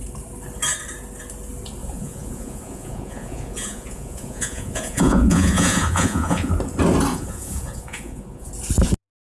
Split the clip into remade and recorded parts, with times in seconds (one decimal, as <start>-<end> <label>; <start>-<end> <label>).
0.0-1.8 recorded; 1.8-6.5 remade; 6.5-7.1 recorded; 7.1-8.5 remade; 8.5-9.4 recorded